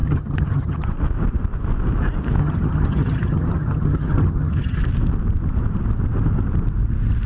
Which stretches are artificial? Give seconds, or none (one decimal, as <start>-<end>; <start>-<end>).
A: 0.0-0.9; 2.4-4.8